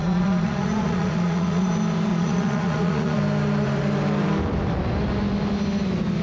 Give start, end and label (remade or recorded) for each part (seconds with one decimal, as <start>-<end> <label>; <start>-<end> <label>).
0.0-1.7 remade; 1.7-2.1 recorded; 2.1-3.2 remade; 3.2-6.2 recorded